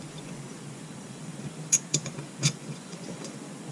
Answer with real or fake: fake